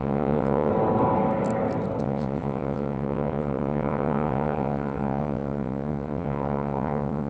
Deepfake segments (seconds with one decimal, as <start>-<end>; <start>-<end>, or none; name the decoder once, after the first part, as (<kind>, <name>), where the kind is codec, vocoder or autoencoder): 0.0-0.7 (vocoder, WaveNeXt); 2.0-7.3